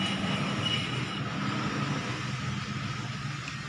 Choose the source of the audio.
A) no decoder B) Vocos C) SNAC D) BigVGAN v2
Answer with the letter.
A